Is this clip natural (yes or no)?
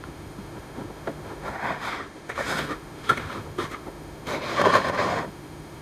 no